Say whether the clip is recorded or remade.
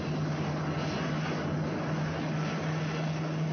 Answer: recorded